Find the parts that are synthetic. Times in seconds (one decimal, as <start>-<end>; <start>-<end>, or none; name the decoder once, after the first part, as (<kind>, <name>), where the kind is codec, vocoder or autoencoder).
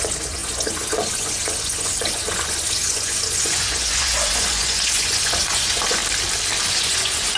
0.0-6.0 (vocoder, Vocos); 6.6-7.4